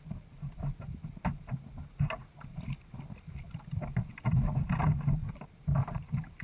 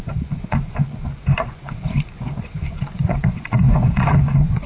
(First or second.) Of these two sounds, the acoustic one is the first